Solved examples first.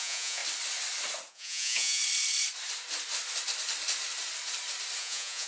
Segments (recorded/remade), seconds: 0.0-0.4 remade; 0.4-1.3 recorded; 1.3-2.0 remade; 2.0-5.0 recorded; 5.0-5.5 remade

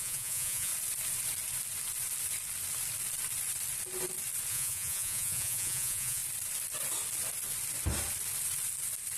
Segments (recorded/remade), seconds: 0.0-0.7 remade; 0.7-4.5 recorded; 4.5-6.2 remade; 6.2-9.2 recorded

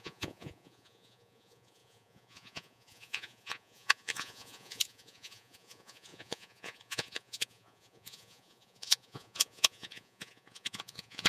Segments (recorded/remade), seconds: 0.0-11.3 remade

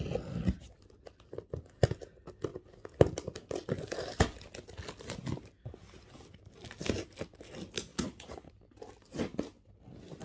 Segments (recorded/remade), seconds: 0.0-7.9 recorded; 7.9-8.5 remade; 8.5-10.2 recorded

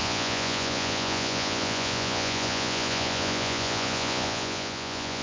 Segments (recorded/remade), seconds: 0.0-5.2 remade

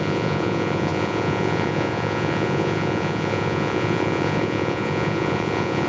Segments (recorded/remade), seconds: 0.0-5.9 remade

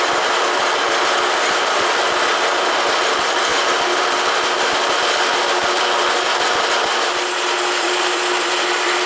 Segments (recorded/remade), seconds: 0.0-9.1 recorded

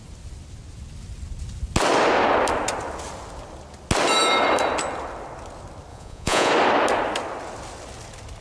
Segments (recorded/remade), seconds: 0.0-5.9 recorded; 5.9-6.5 remade; 6.5-8.4 recorded